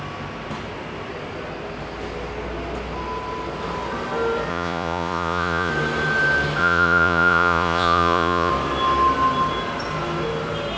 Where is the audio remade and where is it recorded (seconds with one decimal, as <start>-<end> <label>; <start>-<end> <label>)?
0.0-4.5 recorded; 4.5-5.7 remade; 5.7-6.6 recorded; 6.6-8.5 remade; 8.5-10.8 recorded